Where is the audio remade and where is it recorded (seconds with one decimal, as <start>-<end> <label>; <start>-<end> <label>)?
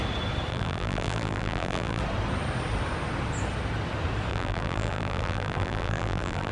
0.0-0.5 recorded; 0.5-2.0 remade; 2.0-4.3 recorded; 4.3-6.5 remade